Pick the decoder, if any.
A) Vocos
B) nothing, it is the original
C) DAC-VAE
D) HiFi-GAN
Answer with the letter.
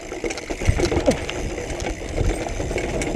B